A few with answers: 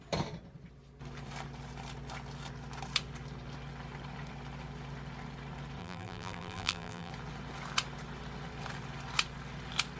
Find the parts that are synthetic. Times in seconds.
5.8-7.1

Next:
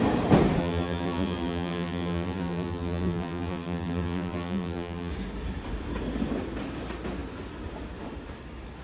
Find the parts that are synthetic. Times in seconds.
0.6-5.1

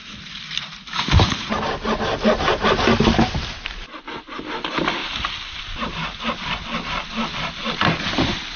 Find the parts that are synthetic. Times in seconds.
0.0-1.6; 5.0-5.6

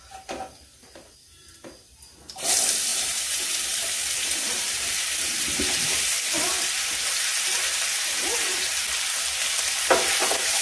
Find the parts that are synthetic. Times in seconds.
2.9-6.0; 7.3-8.7

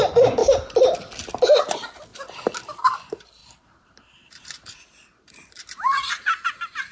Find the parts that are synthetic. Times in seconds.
0.0-0.4; 1.6-2.1; 2.6-6.9

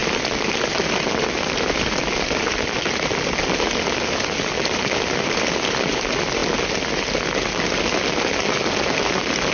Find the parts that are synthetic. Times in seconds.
0.0-2.6

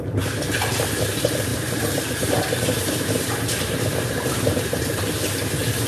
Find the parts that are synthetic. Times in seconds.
1.5-5.0